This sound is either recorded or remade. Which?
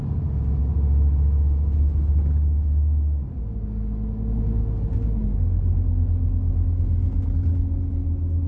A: recorded